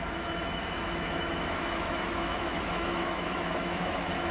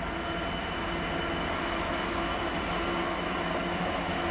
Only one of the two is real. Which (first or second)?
second